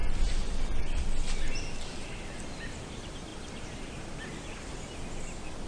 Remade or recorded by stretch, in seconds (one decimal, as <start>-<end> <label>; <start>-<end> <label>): 0.0-5.7 recorded